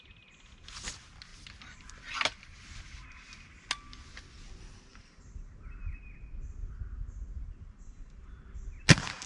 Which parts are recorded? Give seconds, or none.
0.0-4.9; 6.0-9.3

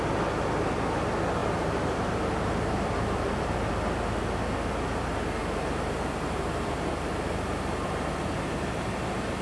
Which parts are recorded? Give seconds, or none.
0.0-1.4; 3.7-5.4; 8.9-9.4